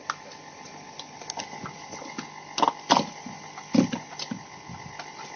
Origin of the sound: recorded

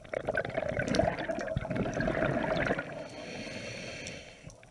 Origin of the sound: recorded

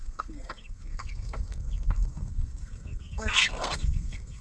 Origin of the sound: remade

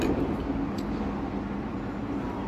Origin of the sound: recorded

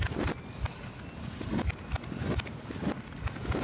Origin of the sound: recorded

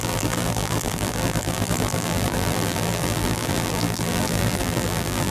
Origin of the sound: remade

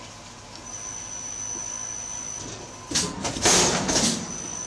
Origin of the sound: recorded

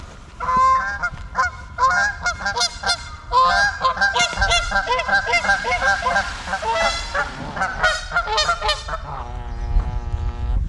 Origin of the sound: recorded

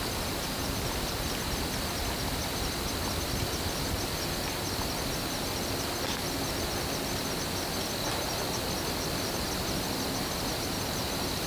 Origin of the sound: recorded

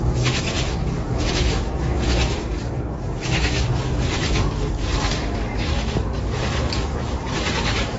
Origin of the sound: remade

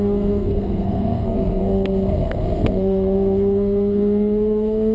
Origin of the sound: remade